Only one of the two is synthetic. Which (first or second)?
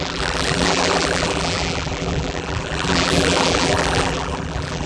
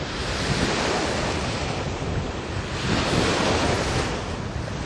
first